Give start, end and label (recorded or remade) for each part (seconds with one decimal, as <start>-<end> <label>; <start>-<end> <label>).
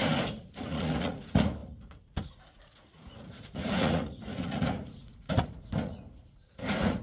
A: 0.0-7.0 remade